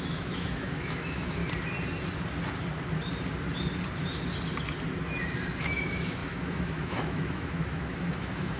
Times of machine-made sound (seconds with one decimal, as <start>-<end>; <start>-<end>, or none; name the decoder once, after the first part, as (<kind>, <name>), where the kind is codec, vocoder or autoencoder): 0.0-1.4 (autoencoder, DAC-VAE); 5.6-8.6

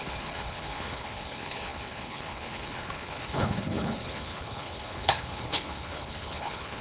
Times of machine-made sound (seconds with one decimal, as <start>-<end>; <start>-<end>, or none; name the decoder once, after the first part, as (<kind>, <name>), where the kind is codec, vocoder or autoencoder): 0.0-6.8 (codec, HILCodec)